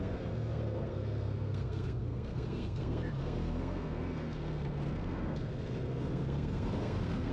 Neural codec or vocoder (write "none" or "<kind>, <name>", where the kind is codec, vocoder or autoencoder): codec, SNAC